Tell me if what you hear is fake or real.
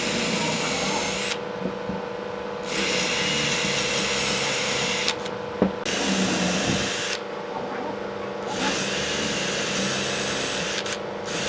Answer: real